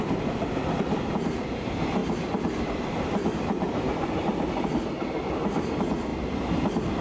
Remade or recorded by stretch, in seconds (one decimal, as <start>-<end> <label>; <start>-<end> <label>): 0.0-7.0 recorded